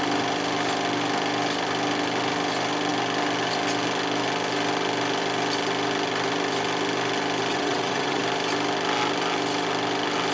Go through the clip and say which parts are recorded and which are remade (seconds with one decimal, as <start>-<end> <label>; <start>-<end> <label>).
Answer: 0.0-7.5 recorded; 7.5-8.2 remade; 8.2-10.3 recorded